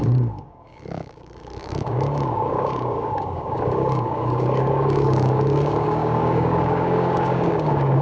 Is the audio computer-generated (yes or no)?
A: yes